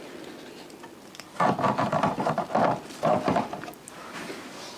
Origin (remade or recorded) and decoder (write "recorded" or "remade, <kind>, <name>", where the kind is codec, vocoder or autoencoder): recorded